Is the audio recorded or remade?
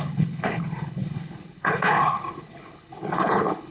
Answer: remade